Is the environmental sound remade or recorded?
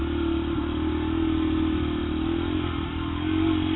recorded